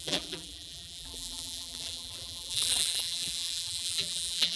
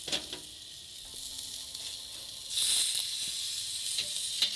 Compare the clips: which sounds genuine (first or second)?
second